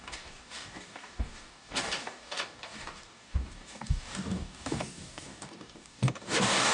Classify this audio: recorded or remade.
remade